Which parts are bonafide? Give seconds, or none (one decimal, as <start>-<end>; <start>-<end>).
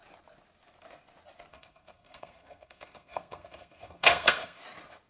0.0-1.5; 4.6-5.1